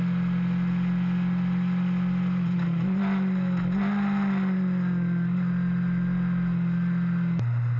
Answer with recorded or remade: recorded